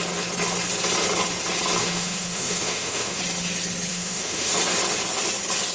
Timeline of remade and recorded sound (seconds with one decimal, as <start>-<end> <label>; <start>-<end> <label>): 0.0-1.8 recorded; 1.8-3.2 remade; 3.2-3.9 recorded; 3.9-4.5 remade; 4.5-5.7 recorded